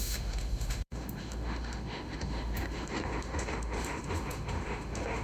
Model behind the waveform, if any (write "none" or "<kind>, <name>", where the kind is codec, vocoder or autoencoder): autoencoder, DAC-VAE